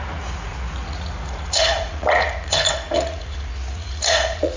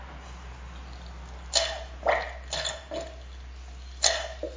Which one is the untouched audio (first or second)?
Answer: second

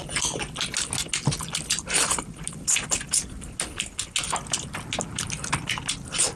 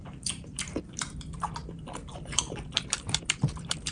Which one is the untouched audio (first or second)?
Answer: first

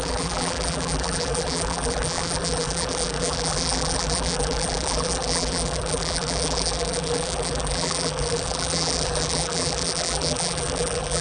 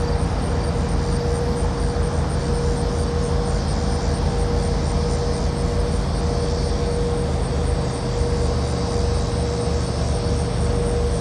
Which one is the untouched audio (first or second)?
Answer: second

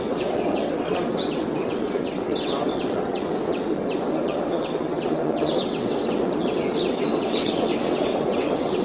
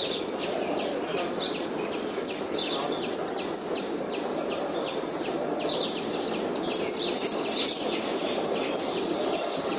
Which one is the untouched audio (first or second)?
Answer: second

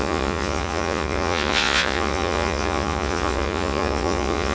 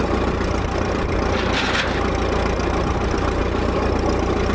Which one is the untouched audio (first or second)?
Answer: second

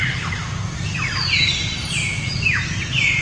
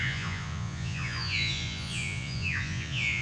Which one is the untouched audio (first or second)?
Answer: first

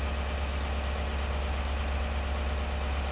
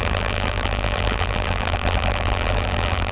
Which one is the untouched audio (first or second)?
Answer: first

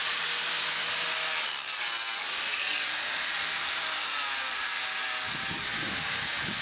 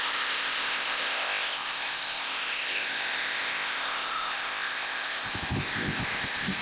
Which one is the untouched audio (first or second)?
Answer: first